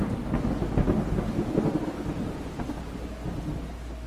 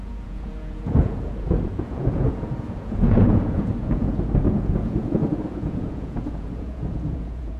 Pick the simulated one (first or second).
second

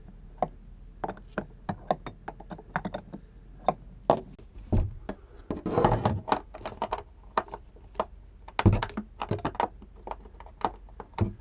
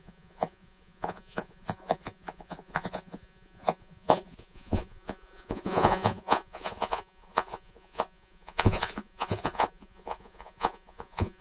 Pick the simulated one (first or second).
second